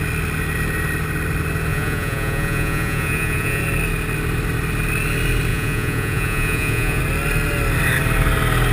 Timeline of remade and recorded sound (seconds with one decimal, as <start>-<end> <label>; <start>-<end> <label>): 0.0-1.7 recorded; 1.7-3.6 remade; 3.6-5.5 recorded; 5.5-7.0 remade; 7.0-8.7 recorded